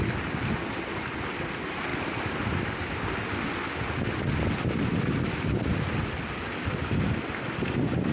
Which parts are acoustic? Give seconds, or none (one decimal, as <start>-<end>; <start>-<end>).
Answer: 0.0-8.1